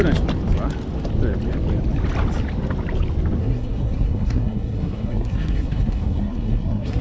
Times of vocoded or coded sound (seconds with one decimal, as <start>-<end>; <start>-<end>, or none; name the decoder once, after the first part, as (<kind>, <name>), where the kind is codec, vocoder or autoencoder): 3.4-7.0 (codec, SNAC)